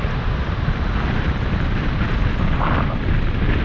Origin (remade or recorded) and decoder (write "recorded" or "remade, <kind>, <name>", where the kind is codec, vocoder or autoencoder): recorded